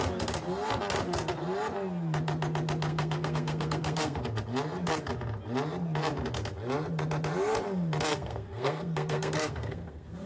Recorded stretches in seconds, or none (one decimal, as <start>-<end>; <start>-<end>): 0.0-2.9; 4.2-8.1